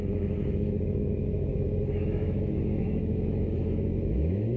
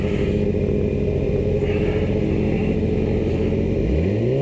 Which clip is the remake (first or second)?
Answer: first